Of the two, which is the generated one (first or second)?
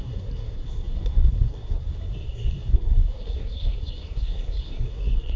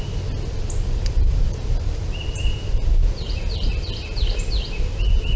first